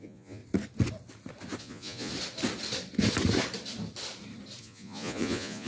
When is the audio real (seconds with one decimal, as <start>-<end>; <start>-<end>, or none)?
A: 0.4-1.6; 2.1-4.6